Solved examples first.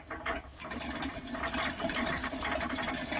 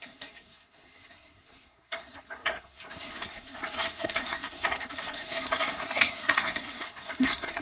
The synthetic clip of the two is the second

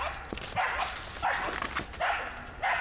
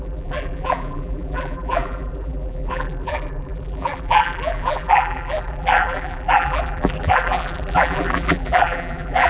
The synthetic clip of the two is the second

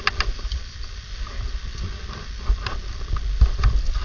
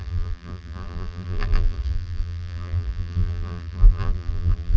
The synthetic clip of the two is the second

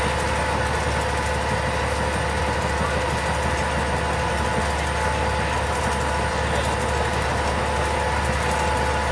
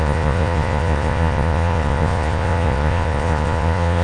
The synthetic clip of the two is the second